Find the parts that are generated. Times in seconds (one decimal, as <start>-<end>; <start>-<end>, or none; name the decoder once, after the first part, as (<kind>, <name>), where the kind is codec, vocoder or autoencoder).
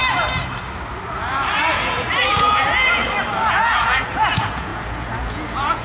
1.7-3.0 (vocoder, Vocos); 3.5-5.8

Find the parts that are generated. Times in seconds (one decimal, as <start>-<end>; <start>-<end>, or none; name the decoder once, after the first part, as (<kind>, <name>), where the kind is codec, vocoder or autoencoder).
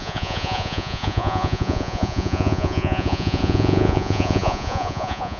0.0-5.4 (vocoder, Vocos)